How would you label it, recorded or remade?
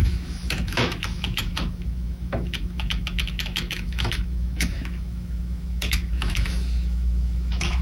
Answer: remade